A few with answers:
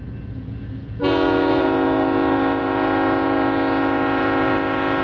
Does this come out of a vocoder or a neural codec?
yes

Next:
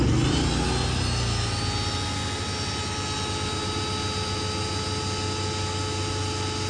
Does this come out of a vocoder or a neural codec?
no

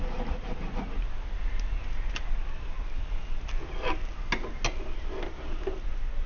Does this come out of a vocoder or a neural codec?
no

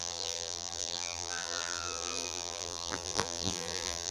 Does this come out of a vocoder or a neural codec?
yes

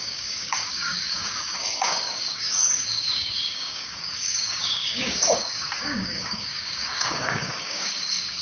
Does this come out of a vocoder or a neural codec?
yes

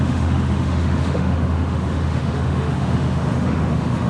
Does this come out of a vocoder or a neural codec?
yes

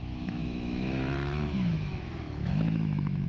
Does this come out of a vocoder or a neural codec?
yes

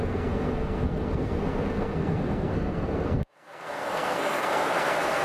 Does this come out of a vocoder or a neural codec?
yes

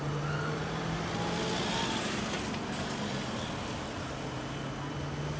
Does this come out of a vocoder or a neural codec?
no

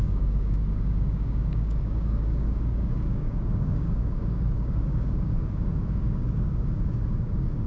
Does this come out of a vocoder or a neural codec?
yes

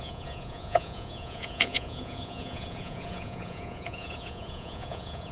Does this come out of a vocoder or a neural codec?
yes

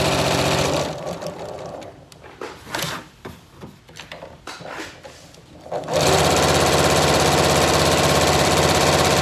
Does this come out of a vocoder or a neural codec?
yes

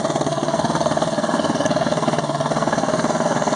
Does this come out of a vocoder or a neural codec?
yes